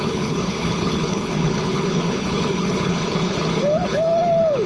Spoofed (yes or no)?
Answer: yes